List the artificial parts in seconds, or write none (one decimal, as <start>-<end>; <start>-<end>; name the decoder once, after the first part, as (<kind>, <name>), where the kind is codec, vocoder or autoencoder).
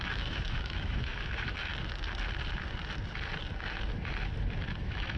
0.0-1.7 (autoencoder, DAC-VAE); 4.8-5.2